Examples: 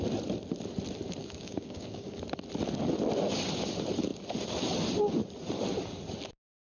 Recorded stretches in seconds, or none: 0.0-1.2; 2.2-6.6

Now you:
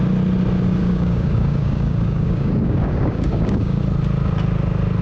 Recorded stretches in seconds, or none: 0.0-0.8; 3.8-5.0

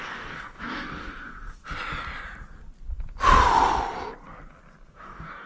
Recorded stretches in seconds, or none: 1.6-4.9

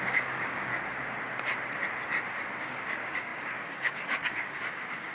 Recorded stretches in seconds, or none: 0.7-2.6

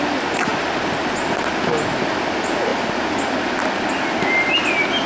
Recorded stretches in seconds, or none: 0.0-5.1